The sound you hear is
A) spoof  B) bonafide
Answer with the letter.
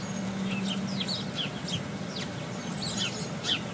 B